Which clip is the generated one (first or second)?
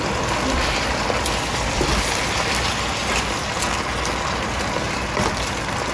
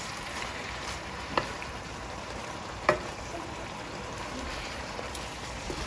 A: second